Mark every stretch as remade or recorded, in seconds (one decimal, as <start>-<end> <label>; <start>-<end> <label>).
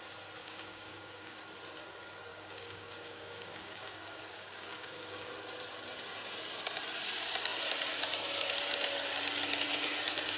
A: 0.0-0.4 recorded; 0.4-1.4 remade; 1.4-2.3 recorded; 2.3-5.3 remade; 5.3-10.4 recorded